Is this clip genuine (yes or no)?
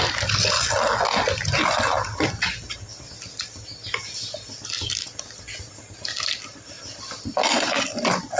yes